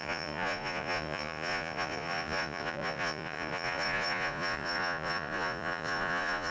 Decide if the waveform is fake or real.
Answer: fake